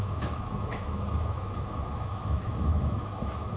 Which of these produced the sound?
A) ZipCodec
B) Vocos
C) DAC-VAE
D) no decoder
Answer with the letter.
C